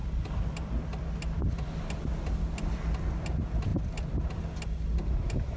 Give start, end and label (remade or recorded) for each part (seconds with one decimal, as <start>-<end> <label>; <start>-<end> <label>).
0.0-1.1 remade; 1.1-3.7 recorded; 3.7-4.3 remade; 4.3-5.6 recorded